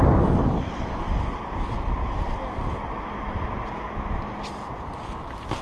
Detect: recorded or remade recorded